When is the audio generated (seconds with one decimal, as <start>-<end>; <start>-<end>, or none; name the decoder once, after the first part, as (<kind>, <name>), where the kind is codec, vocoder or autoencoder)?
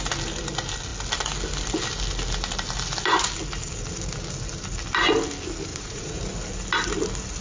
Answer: 5.7-6.2 (vocoder, Vocos)